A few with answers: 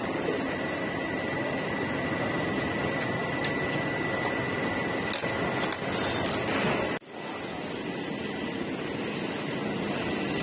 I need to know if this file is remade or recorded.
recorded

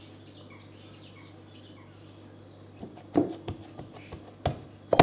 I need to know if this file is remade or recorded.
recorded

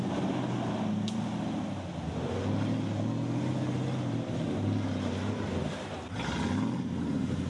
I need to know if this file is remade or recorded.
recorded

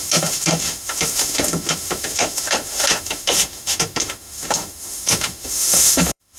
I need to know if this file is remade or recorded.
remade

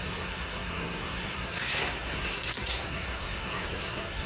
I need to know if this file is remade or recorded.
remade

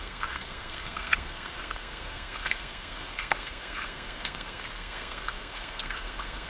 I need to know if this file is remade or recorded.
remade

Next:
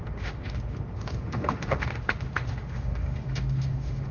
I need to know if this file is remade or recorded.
remade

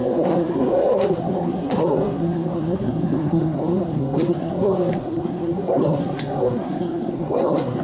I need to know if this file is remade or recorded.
remade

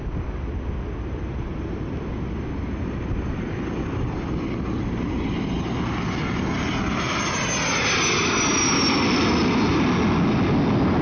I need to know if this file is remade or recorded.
recorded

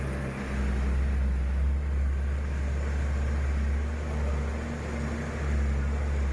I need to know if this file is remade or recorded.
recorded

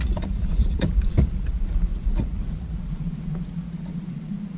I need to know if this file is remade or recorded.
remade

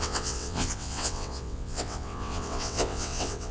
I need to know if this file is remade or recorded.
remade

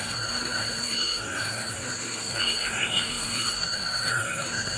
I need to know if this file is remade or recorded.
remade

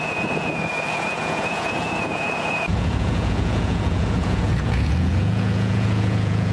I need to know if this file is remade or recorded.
remade